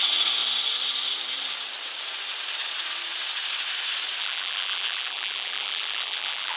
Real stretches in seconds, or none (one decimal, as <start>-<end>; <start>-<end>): 0.0-4.2